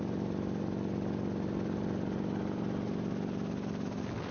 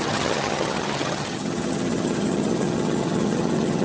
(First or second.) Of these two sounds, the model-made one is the second